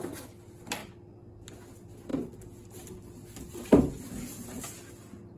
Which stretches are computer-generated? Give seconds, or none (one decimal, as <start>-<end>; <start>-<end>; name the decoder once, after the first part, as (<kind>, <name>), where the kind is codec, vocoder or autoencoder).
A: none